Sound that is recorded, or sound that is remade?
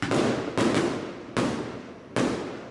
recorded